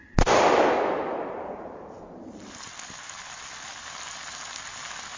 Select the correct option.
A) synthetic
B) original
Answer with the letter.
B